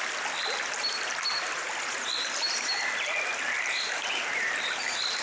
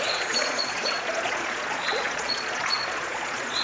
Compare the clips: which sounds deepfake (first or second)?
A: second